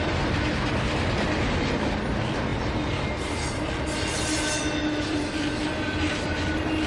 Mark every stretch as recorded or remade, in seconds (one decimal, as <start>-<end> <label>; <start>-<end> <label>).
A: 0.0-6.9 recorded